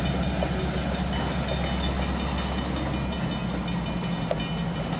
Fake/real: real